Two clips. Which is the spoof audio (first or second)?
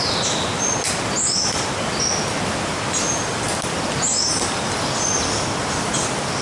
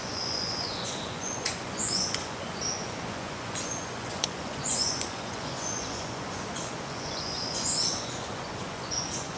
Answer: second